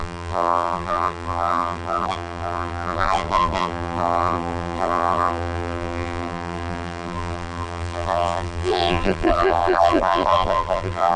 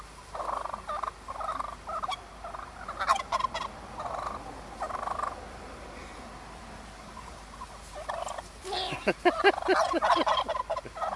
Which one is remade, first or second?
first